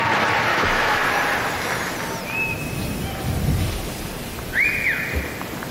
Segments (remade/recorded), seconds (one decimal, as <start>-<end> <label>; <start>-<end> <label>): 0.0-0.5 recorded; 0.5-1.0 remade; 1.0-5.7 recorded